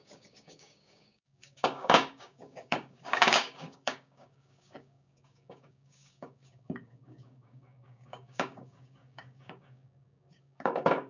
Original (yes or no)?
no